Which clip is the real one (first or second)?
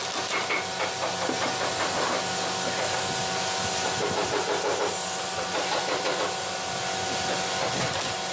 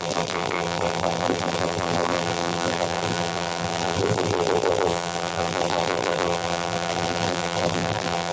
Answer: first